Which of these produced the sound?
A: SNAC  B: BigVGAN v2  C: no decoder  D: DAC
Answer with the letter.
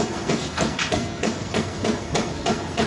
A